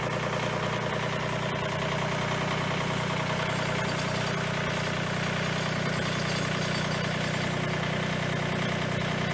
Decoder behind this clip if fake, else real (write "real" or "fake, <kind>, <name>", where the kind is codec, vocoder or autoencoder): real